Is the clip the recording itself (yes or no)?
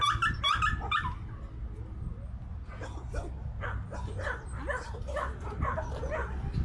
yes